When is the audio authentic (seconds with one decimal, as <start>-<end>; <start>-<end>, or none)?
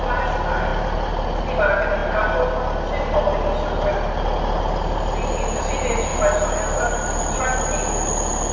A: 0.0-8.5